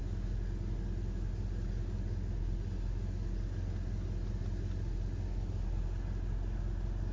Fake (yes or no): no